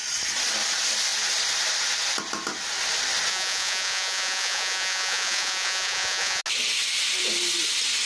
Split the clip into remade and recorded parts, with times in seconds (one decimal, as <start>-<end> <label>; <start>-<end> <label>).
0.0-3.3 recorded; 3.3-6.4 remade; 6.4-8.1 recorded